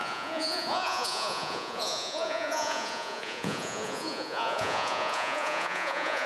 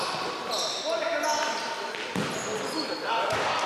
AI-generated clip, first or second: first